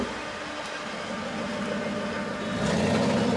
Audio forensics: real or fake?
real